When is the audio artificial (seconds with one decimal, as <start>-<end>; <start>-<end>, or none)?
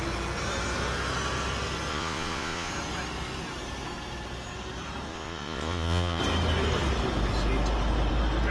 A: 1.9-2.7; 5.1-6.2